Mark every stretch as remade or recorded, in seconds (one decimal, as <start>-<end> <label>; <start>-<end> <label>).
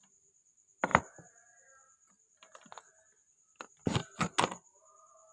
0.0-5.3 recorded